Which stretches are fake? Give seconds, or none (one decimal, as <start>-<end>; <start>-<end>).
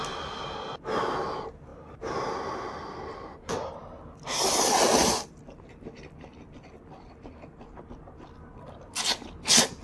1.7-3.7; 5.0-8.7